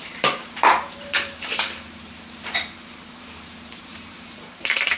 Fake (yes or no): yes